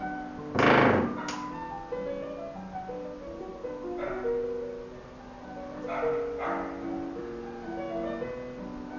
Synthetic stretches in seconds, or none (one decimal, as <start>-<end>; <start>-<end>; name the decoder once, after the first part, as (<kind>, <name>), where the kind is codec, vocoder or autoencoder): none